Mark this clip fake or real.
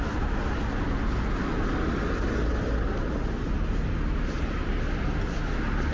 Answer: real